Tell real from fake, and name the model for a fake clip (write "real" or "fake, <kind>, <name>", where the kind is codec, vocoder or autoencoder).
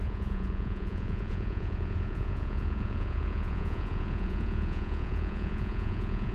fake, vocoder, Vocos